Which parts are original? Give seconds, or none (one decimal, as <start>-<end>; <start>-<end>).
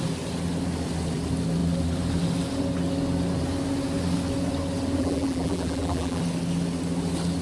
0.0-5.0; 6.2-7.4